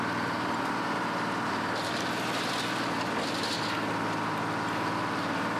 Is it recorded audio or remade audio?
recorded